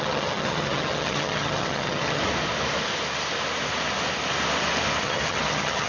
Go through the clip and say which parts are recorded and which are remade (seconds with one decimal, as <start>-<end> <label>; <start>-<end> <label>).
0.0-2.2 remade; 2.2-5.0 recorded; 5.0-5.9 remade